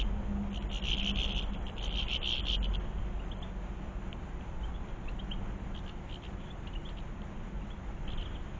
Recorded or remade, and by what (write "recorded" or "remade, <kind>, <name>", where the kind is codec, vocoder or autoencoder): recorded